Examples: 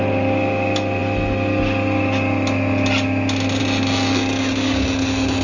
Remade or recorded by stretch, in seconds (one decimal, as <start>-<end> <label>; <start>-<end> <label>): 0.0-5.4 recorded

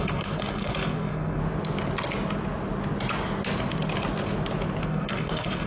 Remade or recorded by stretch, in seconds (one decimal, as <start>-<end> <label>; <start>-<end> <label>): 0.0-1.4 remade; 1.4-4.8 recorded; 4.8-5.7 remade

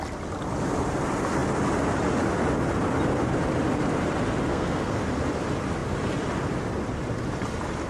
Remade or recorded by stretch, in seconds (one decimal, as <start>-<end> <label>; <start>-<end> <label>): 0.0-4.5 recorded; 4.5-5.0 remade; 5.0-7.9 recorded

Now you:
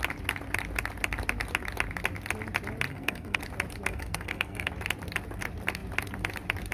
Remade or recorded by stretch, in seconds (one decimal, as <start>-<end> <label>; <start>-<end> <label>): 0.0-2.9 recorded; 2.9-3.4 remade; 3.4-3.9 recorded; 3.9-4.7 remade; 4.7-6.7 recorded

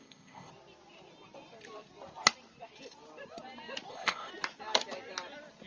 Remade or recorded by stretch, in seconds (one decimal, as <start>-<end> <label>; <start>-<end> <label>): 0.0-0.5 remade; 0.5-3.9 recorded; 3.9-4.3 remade; 4.3-5.7 recorded

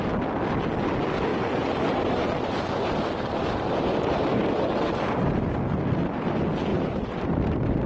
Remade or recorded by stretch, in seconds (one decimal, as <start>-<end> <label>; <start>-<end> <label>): 0.0-1.3 recorded; 1.3-5.1 remade; 5.1-6.7 recorded; 6.7-7.3 remade; 7.3-7.9 recorded